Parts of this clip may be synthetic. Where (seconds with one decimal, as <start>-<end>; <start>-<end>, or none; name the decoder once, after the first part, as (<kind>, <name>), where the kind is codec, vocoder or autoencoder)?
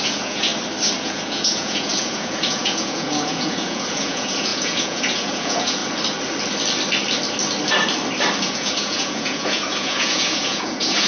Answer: 0.0-0.5 (vocoder, Vocos); 1.0-5.8; 8.4-11.1